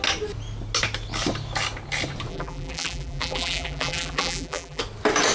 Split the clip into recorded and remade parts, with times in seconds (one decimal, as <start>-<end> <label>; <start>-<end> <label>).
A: 0.0-2.3 recorded; 2.3-4.8 remade; 4.8-5.3 recorded

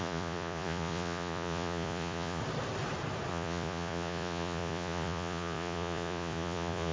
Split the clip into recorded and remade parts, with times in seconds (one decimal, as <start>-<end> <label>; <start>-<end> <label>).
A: 0.0-2.4 remade; 2.4-3.3 recorded; 3.3-6.9 remade

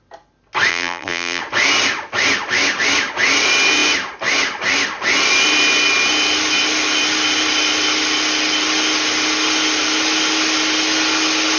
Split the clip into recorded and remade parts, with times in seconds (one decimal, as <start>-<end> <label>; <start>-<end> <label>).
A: 0.0-0.7 recorded; 0.7-1.4 remade; 1.4-11.6 recorded

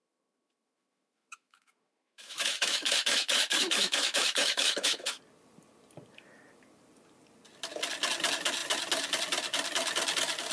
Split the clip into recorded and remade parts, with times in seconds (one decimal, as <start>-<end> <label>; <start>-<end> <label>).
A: 0.0-5.2 remade; 5.2-10.5 recorded

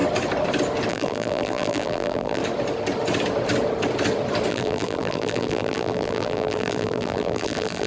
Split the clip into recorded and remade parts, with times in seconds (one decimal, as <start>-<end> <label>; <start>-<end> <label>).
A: 0.0-0.9 recorded; 0.9-2.4 remade; 2.4-4.5 recorded; 4.5-7.9 remade

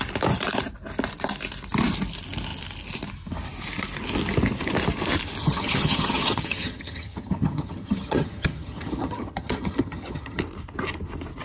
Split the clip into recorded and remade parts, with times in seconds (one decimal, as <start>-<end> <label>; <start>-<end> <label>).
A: 0.0-5.4 recorded; 5.4-10.4 remade; 10.4-11.4 recorded

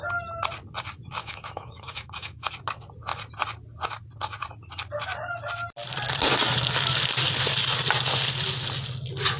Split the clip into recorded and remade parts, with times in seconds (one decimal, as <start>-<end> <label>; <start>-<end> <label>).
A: 0.0-1.2 recorded; 1.2-2.5 remade; 2.5-9.4 recorded

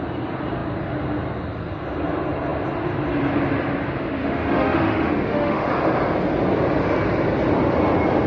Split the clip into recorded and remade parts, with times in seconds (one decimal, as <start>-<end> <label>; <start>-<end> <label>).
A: 0.0-4.2 recorded; 4.2-5.7 remade; 5.7-8.3 recorded